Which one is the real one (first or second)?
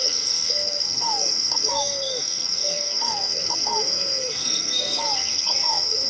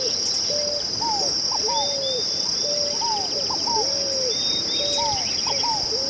second